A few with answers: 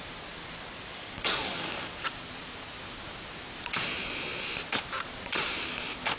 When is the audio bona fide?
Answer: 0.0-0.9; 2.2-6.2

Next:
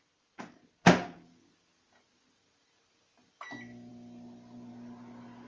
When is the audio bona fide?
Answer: 0.0-5.5

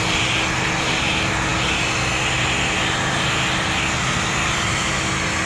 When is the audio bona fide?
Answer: 0.0-5.5

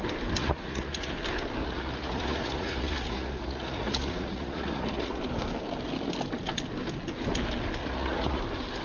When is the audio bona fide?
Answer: 0.0-0.4; 1.1-1.6; 5.2-7.8; 8.4-8.8

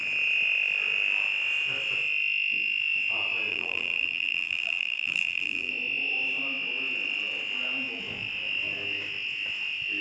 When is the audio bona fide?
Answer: 0.0-3.5; 5.7-10.0

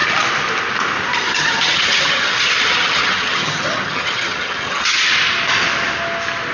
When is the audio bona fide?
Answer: 0.0-1.2; 5.1-6.5

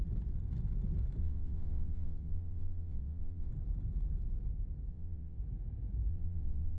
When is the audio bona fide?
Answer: 0.0-1.2; 3.5-4.9; 5.4-6.1